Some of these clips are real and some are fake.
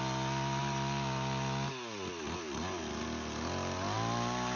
real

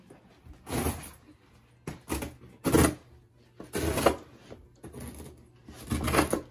real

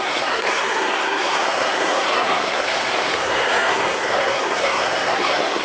fake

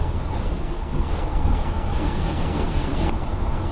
fake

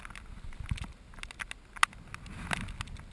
real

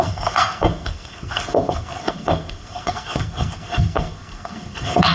fake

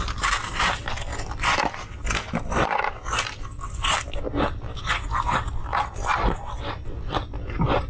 real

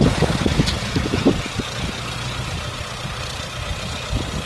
real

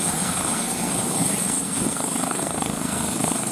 fake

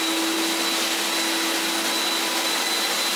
real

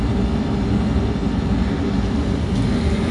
real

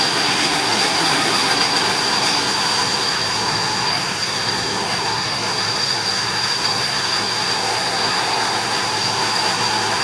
fake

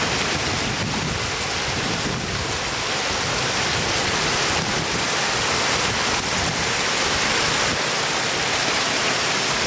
real